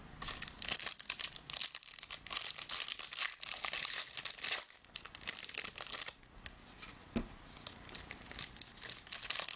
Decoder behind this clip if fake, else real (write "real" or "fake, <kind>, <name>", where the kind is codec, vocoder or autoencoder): real